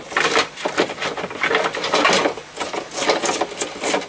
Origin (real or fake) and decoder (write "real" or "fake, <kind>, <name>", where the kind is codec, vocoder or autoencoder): real